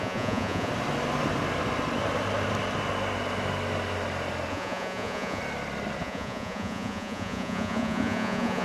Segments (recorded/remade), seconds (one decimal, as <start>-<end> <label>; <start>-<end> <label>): 0.0-0.7 remade; 0.7-4.5 recorded; 4.5-5.4 remade; 5.4-6.0 recorded; 6.0-8.6 remade

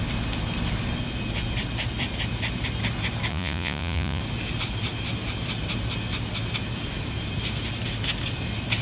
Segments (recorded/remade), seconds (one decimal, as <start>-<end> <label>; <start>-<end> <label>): 0.0-3.3 recorded; 3.3-4.2 remade; 4.2-8.8 recorded